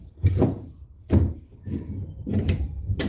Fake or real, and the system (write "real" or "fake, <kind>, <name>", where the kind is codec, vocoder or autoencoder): fake, vocoder, BigVGAN v2